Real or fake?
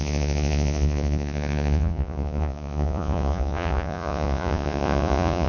fake